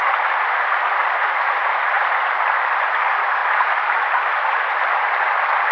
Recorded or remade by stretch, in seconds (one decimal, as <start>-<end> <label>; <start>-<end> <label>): 0.0-5.7 recorded